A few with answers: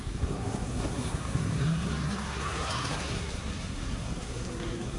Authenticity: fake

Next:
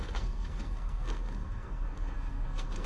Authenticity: fake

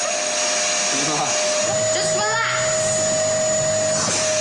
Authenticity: real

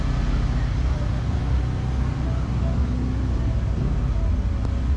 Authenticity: real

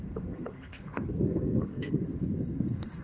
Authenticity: fake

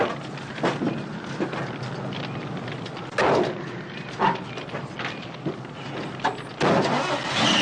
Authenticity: real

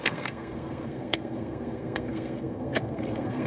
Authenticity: fake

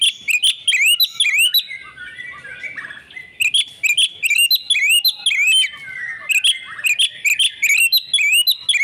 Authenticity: real